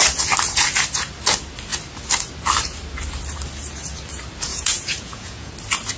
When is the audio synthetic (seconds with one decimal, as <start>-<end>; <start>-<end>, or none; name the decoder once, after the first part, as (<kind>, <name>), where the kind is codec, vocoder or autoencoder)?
4.5-5.5 (vocoder, Vocos)

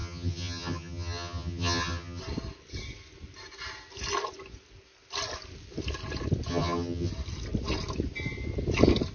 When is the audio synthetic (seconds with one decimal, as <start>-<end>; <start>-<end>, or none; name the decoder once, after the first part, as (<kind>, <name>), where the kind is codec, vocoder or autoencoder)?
0.0-2.2 (vocoder, HiFi-GAN); 6.5-7.1

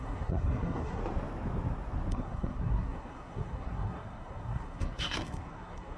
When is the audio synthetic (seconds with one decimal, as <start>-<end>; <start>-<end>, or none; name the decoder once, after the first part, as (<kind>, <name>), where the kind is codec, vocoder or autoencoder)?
0.0-1.0 (codec, SNAC); 2.1-6.0

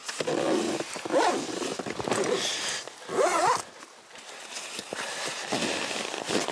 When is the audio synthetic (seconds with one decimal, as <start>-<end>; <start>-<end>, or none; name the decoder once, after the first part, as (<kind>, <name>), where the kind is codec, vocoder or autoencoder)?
none